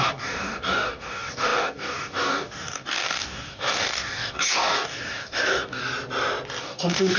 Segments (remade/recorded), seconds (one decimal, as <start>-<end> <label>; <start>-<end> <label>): 0.0-5.8 remade; 5.8-6.6 recorded; 6.6-7.2 remade